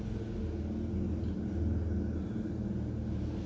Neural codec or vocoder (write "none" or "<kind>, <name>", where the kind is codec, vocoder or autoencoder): none